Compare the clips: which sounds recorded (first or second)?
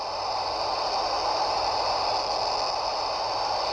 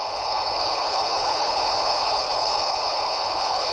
first